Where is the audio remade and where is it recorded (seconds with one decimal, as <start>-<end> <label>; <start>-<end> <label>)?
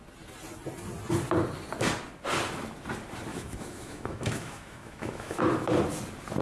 0.0-3.3 recorded; 3.3-5.4 remade; 5.4-6.4 recorded